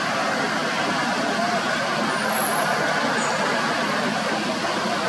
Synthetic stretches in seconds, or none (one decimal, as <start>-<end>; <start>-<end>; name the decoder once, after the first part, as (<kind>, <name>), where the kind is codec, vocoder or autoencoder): none